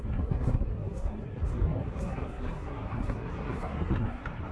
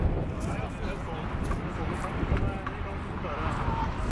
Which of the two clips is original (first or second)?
second